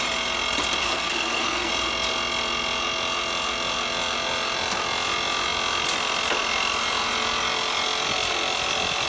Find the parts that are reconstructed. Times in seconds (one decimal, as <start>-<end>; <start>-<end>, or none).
0.8-1.7